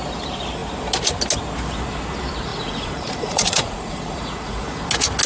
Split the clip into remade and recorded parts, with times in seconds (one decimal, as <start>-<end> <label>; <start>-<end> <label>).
0.0-2.5 recorded; 2.5-4.8 remade; 4.8-5.3 recorded